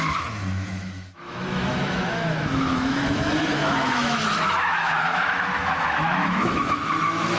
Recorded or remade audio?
remade